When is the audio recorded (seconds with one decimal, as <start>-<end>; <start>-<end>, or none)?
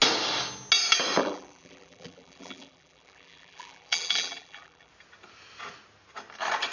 0.0-1.2; 4.9-6.7